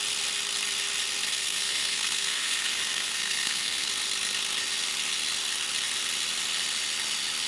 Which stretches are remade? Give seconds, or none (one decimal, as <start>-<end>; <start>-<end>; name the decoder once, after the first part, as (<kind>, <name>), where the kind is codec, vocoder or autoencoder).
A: 1.3-3.9 (codec, SNAC)